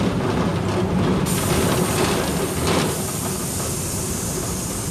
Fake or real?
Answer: real